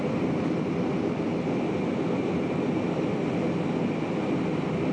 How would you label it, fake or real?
real